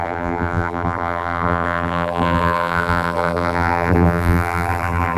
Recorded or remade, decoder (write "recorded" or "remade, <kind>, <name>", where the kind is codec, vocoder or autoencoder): remade, vocoder, BigVGAN v2